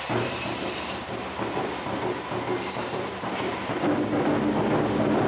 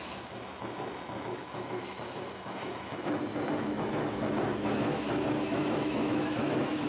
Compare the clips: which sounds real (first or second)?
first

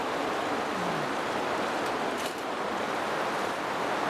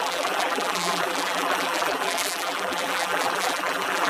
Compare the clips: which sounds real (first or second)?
first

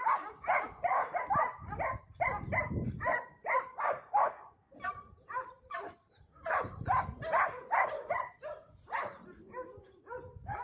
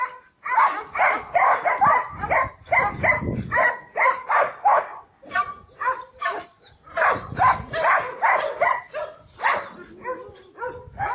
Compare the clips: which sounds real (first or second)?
second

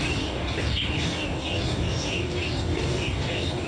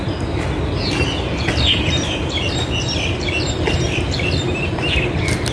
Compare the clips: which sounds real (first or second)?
second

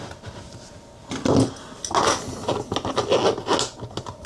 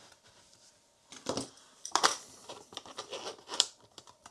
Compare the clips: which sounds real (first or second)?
first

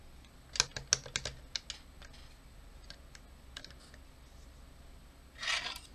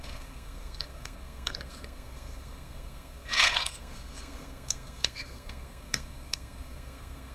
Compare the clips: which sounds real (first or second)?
first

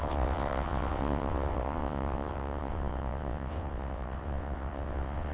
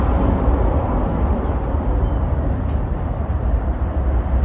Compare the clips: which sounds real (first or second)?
second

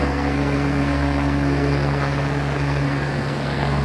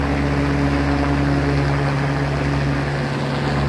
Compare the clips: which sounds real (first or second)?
second